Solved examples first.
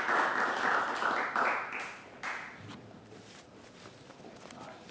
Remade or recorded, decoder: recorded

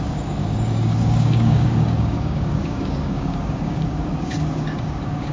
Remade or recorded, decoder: remade, codec, DAC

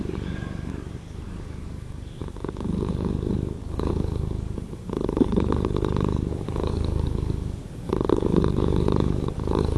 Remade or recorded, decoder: remade, codec, DAC